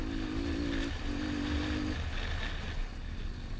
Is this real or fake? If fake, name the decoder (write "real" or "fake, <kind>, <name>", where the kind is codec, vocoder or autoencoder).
real